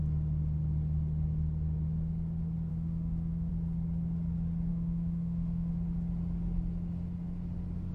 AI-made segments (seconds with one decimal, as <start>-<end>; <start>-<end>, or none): 2.7-3.5; 4.7-5.7